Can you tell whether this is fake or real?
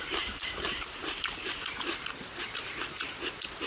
fake